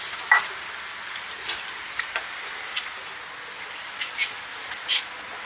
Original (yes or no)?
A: yes